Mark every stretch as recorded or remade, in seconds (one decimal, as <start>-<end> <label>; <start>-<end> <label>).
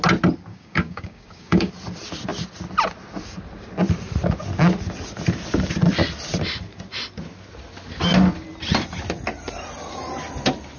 0.0-0.5 recorded; 0.5-1.7 remade; 1.7-10.8 recorded